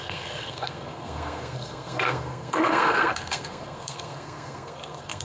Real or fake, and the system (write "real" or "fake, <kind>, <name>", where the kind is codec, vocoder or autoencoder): fake, codec, SNAC